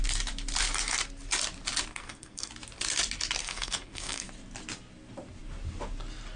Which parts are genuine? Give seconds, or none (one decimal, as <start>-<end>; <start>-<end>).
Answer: 0.0-1.9; 2.5-3.4; 4.3-6.4